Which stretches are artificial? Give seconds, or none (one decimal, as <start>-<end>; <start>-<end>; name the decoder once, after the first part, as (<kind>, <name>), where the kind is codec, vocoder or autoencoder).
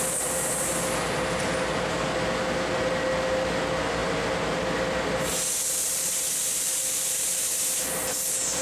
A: none